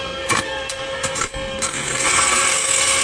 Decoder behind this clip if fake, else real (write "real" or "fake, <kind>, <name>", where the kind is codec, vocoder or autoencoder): fake, codec, SNAC